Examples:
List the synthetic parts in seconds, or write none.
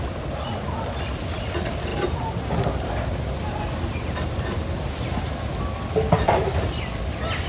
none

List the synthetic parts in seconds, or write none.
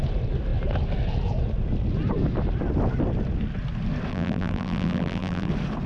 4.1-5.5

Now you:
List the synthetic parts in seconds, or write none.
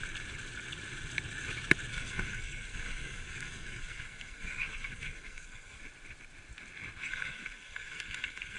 1.9-5.8; 7.0-8.6